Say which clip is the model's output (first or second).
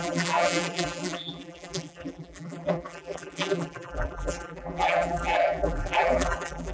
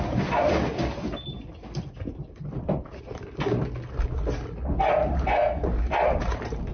first